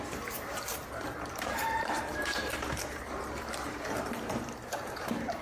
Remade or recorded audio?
remade